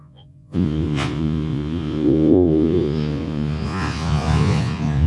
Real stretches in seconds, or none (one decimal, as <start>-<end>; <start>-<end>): none